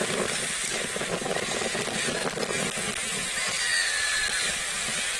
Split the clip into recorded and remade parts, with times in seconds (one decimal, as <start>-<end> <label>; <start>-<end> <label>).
0.0-5.2 recorded